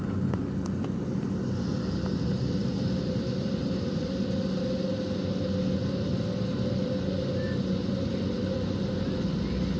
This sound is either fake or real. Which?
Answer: real